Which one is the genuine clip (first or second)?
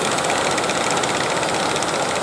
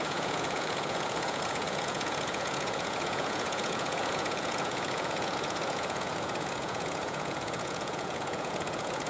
first